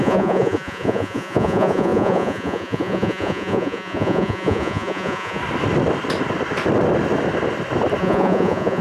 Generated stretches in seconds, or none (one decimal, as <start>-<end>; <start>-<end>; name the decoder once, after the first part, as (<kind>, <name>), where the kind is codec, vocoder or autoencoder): 0.0-5.4 (vocoder, Vocos); 8.0-8.8

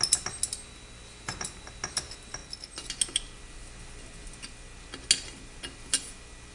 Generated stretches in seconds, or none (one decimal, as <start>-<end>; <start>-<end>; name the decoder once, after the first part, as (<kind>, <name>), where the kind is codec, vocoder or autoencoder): none

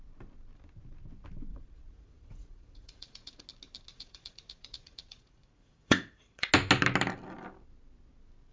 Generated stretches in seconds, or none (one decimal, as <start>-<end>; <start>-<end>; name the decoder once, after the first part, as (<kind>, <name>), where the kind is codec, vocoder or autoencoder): 1.5-3.4 (vocoder, Vocos); 3.9-6.5

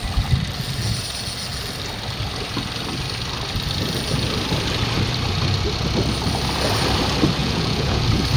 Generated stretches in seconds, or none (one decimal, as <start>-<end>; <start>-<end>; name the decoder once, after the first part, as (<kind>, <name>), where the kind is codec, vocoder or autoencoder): 7.4-8.0 (vocoder, Vocos)

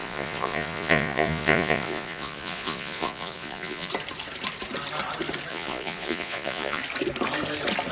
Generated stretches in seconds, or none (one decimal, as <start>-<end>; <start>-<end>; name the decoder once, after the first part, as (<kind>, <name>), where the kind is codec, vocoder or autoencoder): 0.0-3.9 (vocoder, Vocos); 5.5-6.8

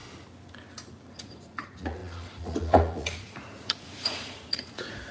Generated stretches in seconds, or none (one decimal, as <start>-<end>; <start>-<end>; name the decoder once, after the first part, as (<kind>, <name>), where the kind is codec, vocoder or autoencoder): 1.1-5.1 (vocoder, Vocos)

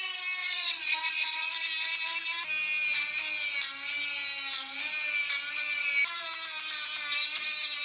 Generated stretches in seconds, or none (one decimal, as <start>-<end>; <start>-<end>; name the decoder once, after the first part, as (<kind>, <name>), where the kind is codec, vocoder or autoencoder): 0.4-1.5 (vocoder, Vocos)

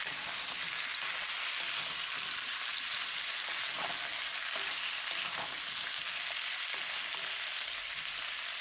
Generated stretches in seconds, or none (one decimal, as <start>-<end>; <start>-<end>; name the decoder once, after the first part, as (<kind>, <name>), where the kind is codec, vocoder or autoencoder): none